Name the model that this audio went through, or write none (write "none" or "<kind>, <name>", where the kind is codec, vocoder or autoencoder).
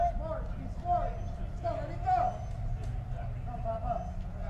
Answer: none